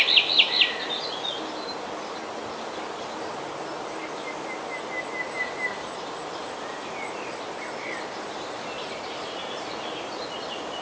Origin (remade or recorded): recorded